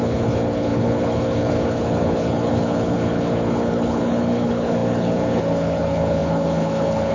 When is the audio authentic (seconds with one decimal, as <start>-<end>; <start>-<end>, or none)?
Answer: none

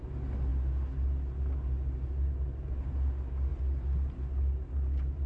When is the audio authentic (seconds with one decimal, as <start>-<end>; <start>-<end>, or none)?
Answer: 0.0-5.3

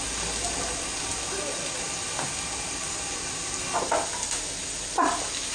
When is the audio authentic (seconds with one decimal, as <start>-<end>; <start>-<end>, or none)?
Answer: 0.0-5.5

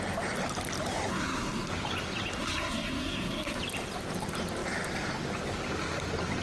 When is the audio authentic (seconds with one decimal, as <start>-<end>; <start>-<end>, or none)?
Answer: 0.0-1.1; 1.7-2.4; 3.6-6.4

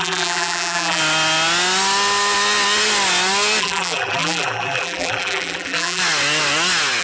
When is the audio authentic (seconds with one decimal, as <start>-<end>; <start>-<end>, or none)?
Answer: 1.0-3.6; 6.0-7.0

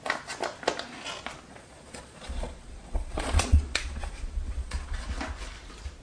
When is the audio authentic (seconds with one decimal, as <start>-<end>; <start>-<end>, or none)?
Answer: 0.0-1.5; 5.1-6.0